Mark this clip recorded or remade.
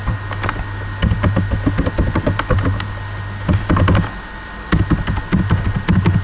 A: recorded